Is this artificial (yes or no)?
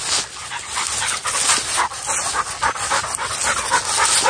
no